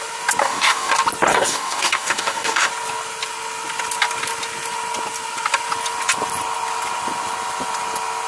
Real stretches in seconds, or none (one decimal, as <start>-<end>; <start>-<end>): 0.0-0.4; 0.9-1.3; 2.7-8.3